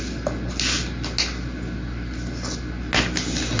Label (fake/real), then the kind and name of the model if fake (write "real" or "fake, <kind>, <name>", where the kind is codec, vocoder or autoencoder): real